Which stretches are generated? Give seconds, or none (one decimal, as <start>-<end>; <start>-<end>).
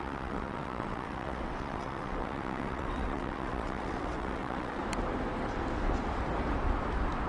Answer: 0.0-4.8